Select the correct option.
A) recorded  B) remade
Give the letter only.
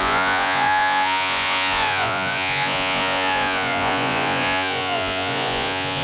B